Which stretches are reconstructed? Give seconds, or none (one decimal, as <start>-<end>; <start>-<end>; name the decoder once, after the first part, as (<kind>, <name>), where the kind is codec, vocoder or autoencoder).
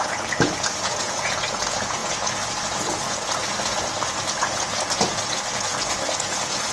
0.0-6.7 (vocoder, Vocos)